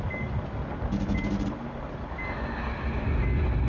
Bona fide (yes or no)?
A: yes